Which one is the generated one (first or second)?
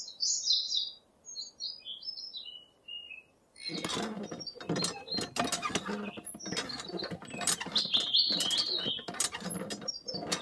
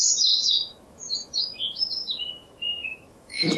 second